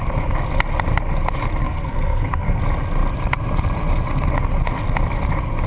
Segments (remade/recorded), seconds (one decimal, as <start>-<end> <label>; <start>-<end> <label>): 0.0-1.6 recorded; 1.6-2.6 remade; 2.6-5.7 recorded